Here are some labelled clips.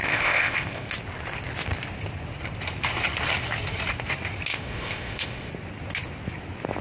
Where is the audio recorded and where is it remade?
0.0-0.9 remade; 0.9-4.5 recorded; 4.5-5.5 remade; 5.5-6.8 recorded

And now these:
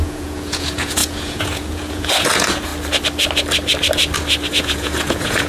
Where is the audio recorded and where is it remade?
0.0-2.7 remade; 2.7-4.5 recorded; 4.5-5.5 remade

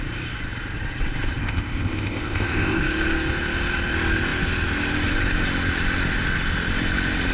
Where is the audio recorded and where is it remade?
0.0-1.4 recorded; 1.4-2.8 remade; 2.8-7.3 recorded